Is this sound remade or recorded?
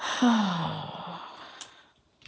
recorded